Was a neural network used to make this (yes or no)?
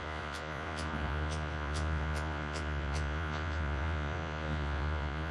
yes